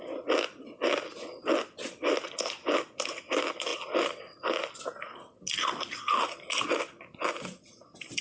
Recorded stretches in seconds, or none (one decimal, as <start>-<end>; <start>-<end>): 0.0-8.2